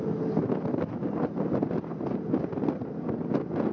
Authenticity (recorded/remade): recorded